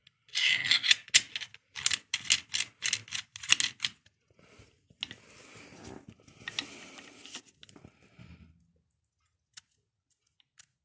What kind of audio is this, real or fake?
real